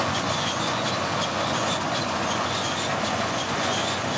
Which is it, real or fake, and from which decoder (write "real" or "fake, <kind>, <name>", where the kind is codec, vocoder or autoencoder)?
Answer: fake, vocoder, Vocos